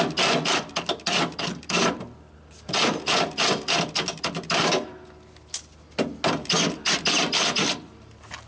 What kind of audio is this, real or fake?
real